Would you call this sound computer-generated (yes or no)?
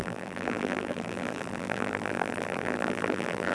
yes